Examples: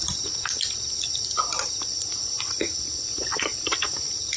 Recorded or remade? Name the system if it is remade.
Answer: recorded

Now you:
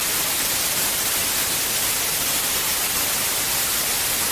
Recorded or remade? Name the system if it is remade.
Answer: recorded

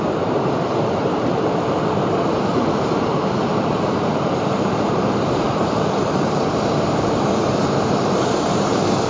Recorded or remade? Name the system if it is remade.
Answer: remade, vocoder, BigVGAN v2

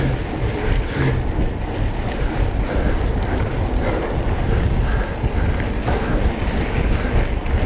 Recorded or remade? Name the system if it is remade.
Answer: recorded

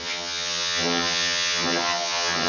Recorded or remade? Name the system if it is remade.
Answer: remade, vocoder, HiFi-GAN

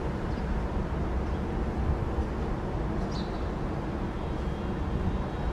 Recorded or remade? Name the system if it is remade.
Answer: recorded